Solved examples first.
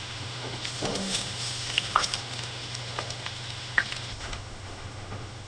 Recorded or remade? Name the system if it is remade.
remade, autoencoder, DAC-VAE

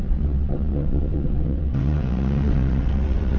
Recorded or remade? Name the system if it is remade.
remade, vocoder, WaveNeXt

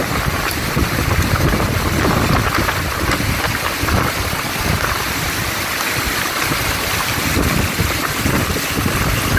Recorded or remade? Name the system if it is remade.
recorded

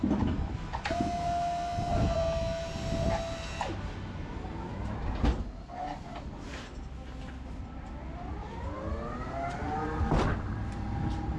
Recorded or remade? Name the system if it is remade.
recorded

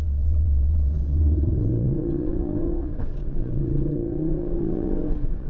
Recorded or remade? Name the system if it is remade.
remade, vocoder, WaveNeXt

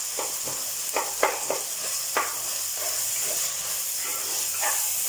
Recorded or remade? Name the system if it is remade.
recorded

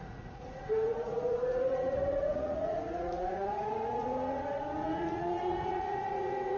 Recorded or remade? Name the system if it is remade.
remade, vocoder, Vocos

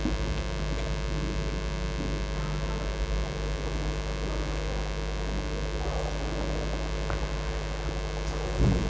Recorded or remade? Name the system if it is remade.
recorded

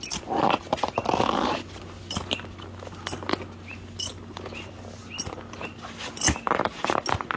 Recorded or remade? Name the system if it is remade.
recorded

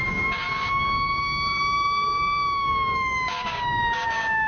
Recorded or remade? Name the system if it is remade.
remade, codec, DAC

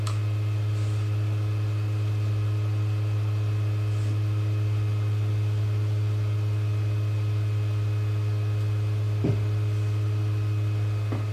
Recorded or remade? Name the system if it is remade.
recorded